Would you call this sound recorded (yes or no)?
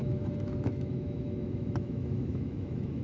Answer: no